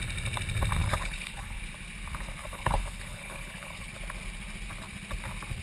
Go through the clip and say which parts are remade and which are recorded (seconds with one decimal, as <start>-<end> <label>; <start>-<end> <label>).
0.0-0.8 recorded; 0.8-1.6 remade; 1.6-2.4 recorded; 2.4-3.9 remade; 3.9-5.6 recorded